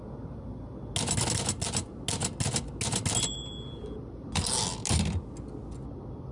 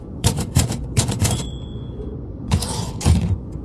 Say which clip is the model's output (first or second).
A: second